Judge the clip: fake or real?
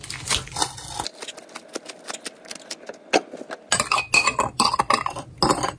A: real